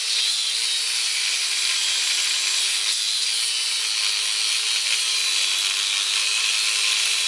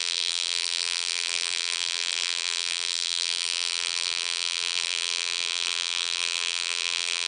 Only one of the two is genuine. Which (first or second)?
first